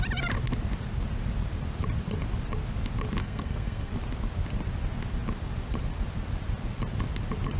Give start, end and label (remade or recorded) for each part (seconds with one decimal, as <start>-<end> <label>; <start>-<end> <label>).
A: 0.0-3.2 recorded; 3.2-3.9 remade; 3.9-7.6 recorded